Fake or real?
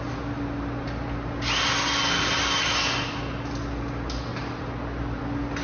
real